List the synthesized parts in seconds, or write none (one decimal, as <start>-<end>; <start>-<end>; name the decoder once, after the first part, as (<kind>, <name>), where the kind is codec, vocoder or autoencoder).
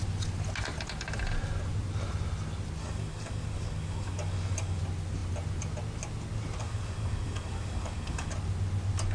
2.8-4.8 (codec, DAC); 6.6-8.3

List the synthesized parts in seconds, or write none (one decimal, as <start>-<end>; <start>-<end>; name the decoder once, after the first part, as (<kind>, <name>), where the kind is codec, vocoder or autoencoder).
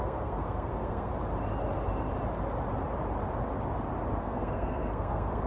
0.0-1.1 (codec, SNAC); 4.2-5.5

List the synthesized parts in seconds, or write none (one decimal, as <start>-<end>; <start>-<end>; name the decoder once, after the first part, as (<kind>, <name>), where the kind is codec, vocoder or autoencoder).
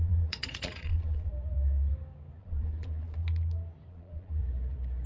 0.0-1.3 (vocoder, Vocos); 2.4-3.2; 3.9-4.4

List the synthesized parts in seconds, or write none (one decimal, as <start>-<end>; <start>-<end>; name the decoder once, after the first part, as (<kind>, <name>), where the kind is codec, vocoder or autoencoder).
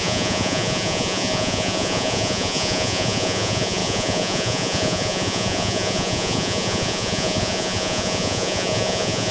0.0-9.3 (vocoder, Vocos)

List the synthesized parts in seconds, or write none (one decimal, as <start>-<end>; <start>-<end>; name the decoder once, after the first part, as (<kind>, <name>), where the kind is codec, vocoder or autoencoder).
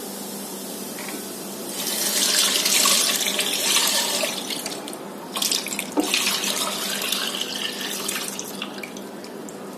3.8-5.0 (vocoder, BigVGAN v2)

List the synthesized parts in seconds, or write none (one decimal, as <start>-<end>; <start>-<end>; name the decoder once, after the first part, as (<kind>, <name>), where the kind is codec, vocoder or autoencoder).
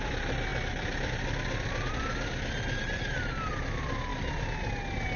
0.0-4.1 (vocoder, BigVGAN v2)